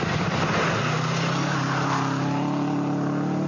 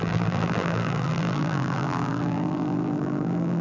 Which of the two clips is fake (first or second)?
second